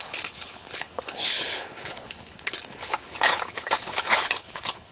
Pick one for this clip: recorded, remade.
remade